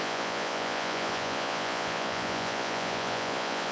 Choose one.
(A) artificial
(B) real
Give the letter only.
A